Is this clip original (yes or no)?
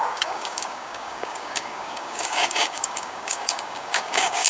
no